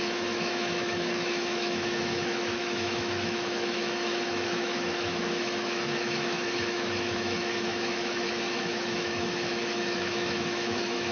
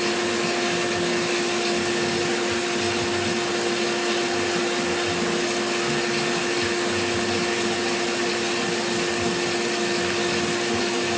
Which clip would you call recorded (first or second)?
second